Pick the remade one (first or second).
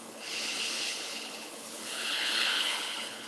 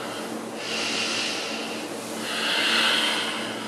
first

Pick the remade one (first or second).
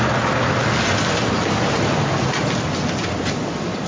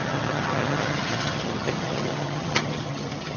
second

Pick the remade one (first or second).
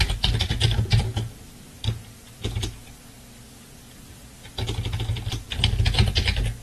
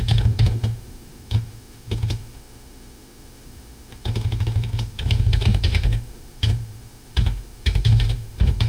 second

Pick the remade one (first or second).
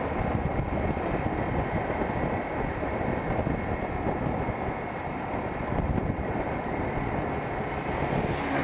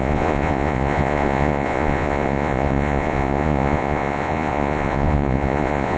second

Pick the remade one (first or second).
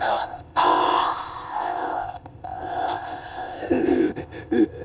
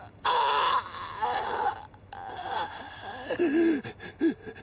first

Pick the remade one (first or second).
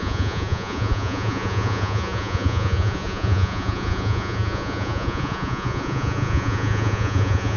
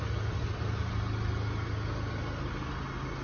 first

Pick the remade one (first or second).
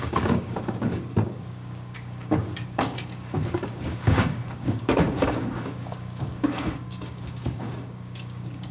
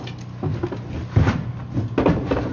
first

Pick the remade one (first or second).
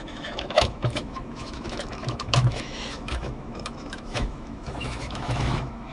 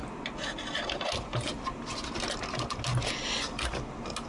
first